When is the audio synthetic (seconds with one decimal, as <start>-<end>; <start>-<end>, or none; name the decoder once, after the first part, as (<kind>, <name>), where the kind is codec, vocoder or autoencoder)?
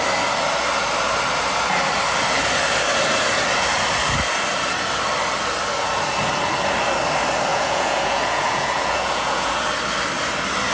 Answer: 7.5-9.5 (vocoder, Vocos)